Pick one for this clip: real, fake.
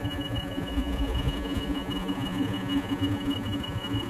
fake